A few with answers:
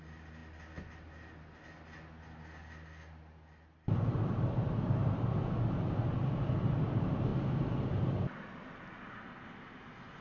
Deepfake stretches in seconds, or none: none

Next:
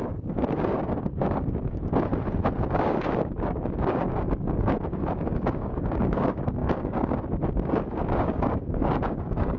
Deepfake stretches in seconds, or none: 0.0-2.1 (codec, DAC); 2.7-9.6